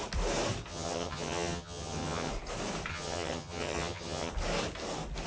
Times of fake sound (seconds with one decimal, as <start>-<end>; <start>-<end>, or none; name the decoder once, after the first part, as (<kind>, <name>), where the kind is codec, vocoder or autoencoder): 0.7-2.3 (vocoder, HiFi-GAN); 2.9-4.3